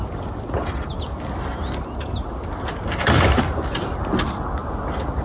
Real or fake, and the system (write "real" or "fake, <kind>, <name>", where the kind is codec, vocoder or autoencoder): real